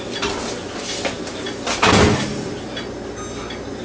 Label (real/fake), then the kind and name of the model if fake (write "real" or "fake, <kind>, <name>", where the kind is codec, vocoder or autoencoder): real